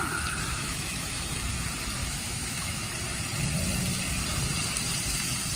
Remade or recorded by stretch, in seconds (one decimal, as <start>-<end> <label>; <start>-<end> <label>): 0.0-0.5 recorded; 0.5-1.3 remade; 1.3-2.0 recorded; 2.0-2.9 remade; 2.9-5.6 recorded